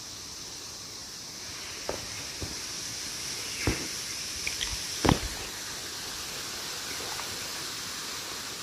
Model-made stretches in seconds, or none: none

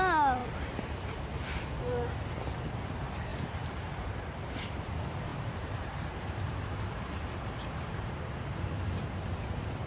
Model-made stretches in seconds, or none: 3.3-4.1 (vocoder, BigVGAN v2); 5.3-9.2

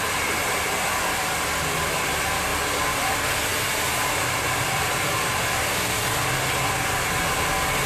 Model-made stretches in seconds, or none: 2.5-3.0 (vocoder, BigVGAN v2); 3.5-5.6

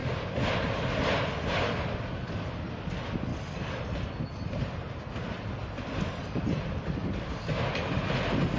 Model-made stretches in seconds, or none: 3.3-4.2 (vocoder, BigVGAN v2); 5.6-8.0

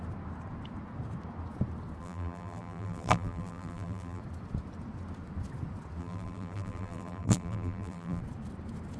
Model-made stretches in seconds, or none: 2.0-4.2 (vocoder, BigVGAN v2); 6.0-8.2